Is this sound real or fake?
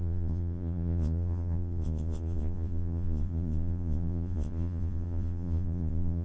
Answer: fake